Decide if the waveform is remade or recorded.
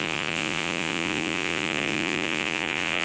remade